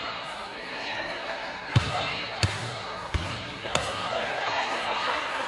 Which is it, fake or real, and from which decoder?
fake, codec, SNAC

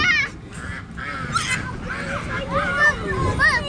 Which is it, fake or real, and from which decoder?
real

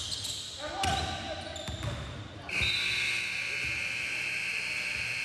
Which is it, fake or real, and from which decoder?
real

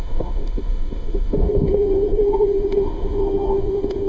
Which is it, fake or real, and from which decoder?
fake, autoencoder, DAC-VAE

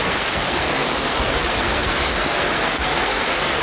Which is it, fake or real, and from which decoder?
fake, codec, SNAC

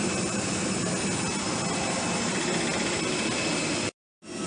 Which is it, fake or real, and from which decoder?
real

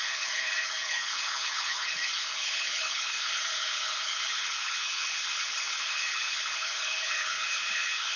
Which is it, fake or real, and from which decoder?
fake, codec, HILCodec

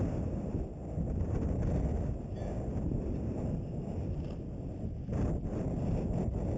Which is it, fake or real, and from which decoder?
real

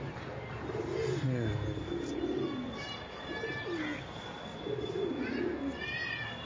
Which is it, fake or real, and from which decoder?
real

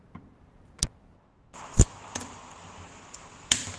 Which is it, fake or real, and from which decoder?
real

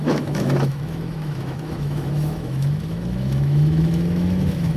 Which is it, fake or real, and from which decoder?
fake, autoencoder, DAC-VAE